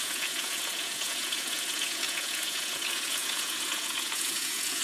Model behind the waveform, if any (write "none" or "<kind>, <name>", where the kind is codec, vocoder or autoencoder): vocoder, Vocos